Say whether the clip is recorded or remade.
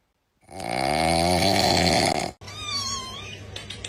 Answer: recorded